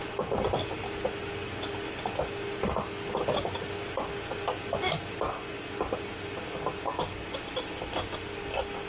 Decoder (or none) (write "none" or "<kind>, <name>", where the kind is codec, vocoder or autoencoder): none